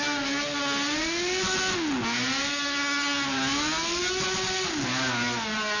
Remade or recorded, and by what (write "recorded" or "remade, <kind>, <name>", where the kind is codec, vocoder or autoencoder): recorded